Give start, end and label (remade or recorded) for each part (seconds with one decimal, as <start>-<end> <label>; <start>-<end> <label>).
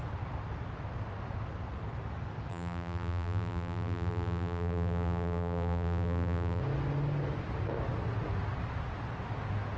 0.0-2.5 recorded; 2.5-6.6 remade; 6.6-9.8 recorded